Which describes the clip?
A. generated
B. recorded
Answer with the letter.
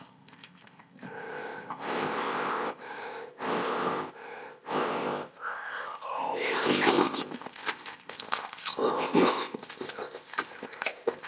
A